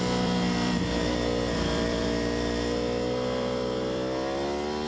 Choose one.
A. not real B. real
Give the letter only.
A